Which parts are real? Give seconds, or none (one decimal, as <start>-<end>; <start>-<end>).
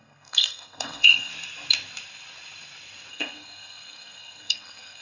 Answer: 1.3-3.1